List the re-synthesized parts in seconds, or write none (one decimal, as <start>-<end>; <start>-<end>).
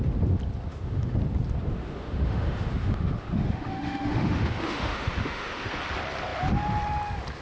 0.7-1.2; 1.7-5.8